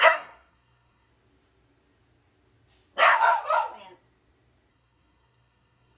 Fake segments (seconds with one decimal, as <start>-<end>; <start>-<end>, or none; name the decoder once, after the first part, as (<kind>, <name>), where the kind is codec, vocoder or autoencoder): 0.0-1.1 (codec, SNAC); 4.7-6.0